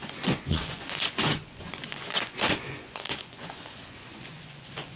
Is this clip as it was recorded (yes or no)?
no